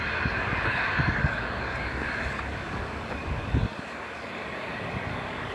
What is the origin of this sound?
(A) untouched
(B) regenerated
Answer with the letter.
B